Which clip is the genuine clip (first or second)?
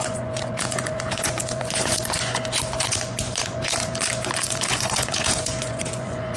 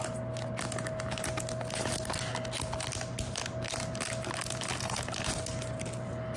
second